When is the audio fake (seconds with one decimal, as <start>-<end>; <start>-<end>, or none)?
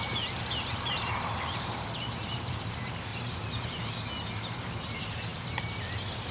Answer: 0.0-3.1; 4.3-6.3